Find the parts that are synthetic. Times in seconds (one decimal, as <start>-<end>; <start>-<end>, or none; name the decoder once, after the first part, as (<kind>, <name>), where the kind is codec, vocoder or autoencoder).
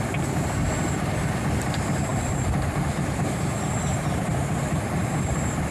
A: none